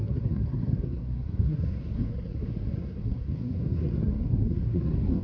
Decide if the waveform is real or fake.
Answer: fake